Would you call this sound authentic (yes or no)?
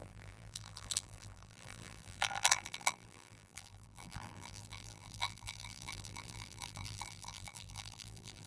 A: no